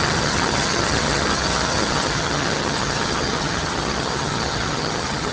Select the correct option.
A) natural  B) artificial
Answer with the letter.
B